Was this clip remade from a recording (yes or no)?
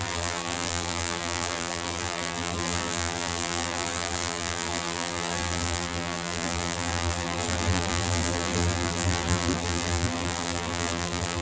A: yes